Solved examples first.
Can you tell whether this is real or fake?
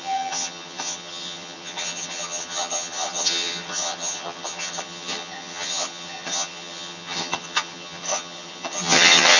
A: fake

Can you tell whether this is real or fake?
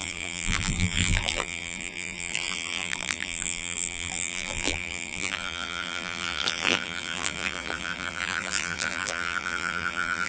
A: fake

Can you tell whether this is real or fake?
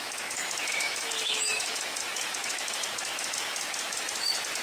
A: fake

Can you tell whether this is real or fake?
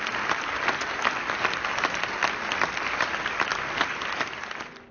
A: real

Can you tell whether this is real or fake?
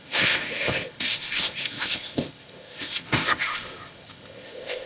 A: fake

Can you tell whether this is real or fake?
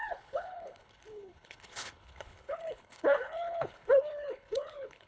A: fake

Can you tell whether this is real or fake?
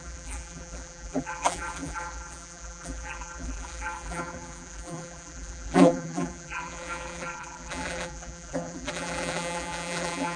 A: fake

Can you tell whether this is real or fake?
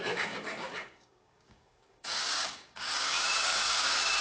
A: fake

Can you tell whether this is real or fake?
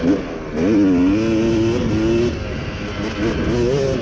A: real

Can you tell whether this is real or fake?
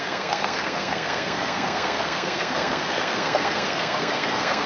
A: fake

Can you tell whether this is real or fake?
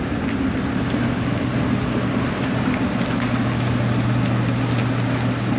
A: real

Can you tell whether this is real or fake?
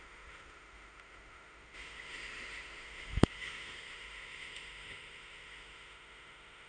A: fake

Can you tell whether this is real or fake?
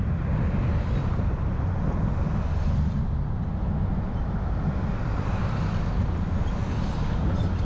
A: real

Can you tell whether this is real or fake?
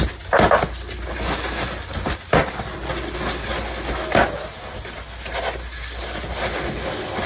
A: real